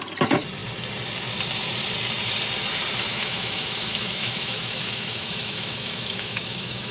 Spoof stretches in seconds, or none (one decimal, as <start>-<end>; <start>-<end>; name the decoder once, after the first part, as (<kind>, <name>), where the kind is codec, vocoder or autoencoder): 3.1-6.9 (autoencoder, DAC-VAE)